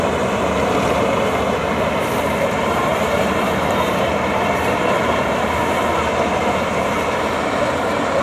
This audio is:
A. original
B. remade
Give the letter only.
B